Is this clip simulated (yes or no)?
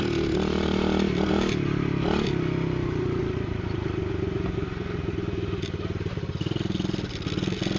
no